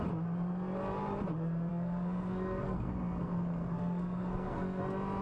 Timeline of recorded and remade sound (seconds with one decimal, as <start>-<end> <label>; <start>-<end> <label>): 0.0-1.7 recorded; 1.7-4.8 remade; 4.8-5.2 recorded